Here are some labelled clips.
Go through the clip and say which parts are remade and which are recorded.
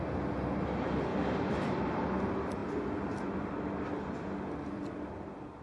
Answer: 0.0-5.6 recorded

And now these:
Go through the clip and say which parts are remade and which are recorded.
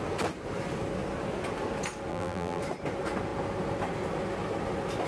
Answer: 0.0-2.1 recorded; 2.1-2.6 remade; 2.6-5.1 recorded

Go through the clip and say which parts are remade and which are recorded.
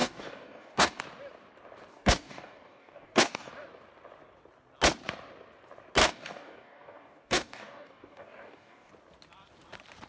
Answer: 0.0-1.0 remade; 1.0-1.9 recorded; 1.9-3.5 remade; 3.5-6.0 recorded; 6.0-8.9 remade; 8.9-10.1 recorded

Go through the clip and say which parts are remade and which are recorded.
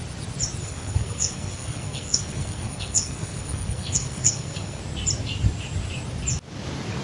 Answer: 0.0-0.6 recorded; 0.6-4.8 remade; 4.8-7.0 recorded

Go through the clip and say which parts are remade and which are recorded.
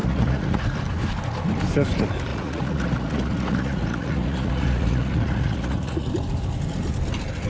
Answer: 0.0-0.6 remade; 0.6-2.3 recorded; 2.3-6.1 remade; 6.1-7.5 recorded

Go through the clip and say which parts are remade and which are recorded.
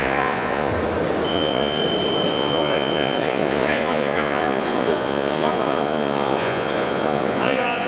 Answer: 0.0-0.7 remade; 0.7-1.3 recorded; 1.3-1.8 remade; 1.8-2.3 recorded; 2.3-7.9 remade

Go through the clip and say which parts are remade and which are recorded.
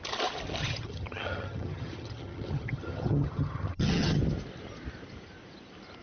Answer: 0.0-0.6 recorded; 0.6-4.2 remade; 4.2-6.0 recorded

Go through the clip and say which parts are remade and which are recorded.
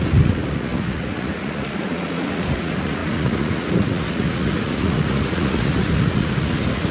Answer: 0.0-6.9 remade